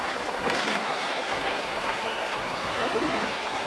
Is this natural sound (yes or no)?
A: no